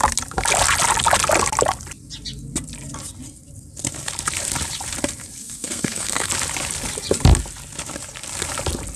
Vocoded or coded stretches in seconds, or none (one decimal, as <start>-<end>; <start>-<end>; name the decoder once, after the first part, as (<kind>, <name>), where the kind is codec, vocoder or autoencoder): 5.4-6.3 (codec, SNAC)